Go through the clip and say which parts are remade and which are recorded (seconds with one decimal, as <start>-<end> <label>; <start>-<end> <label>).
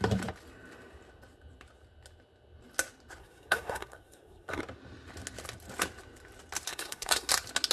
0.0-3.2 recorded; 3.2-4.6 remade; 4.6-6.7 recorded; 6.7-7.3 remade; 7.3-7.7 recorded